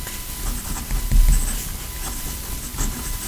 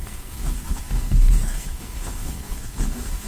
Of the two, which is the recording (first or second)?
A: first